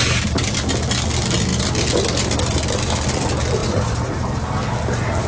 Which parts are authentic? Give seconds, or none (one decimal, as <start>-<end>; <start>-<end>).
0.0-3.6; 4.2-5.3